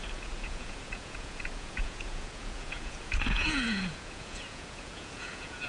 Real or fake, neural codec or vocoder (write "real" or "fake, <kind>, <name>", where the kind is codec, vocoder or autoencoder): fake, vocoder, Vocos